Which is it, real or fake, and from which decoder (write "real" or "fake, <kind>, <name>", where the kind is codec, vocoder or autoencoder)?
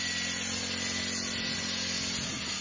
real